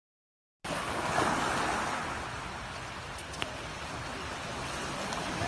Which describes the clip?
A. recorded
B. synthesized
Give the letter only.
A